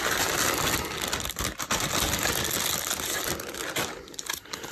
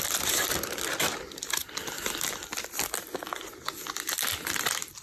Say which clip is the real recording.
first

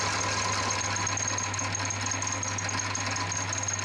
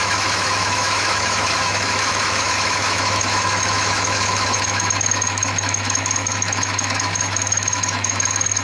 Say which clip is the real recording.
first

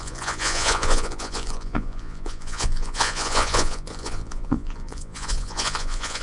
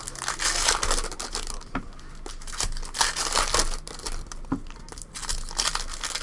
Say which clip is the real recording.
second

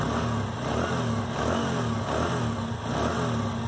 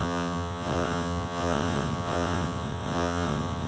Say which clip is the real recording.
first